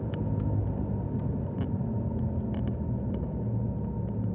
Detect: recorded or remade recorded